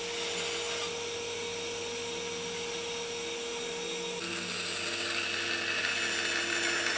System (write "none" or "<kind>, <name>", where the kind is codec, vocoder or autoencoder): none